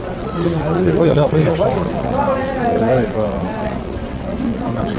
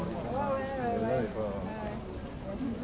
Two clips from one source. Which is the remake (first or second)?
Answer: first